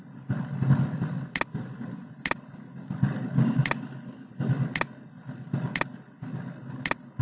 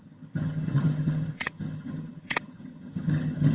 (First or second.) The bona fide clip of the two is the first